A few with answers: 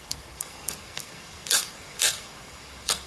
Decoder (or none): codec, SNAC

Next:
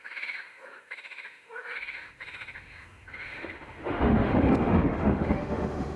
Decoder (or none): autoencoder, DAC-VAE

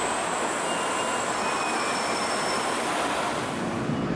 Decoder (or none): none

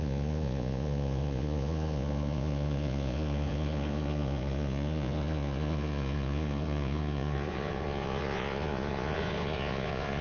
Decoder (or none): vocoder, Vocos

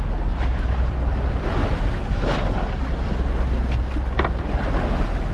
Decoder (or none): none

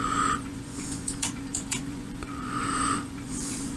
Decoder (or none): vocoder, Vocos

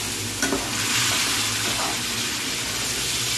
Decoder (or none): none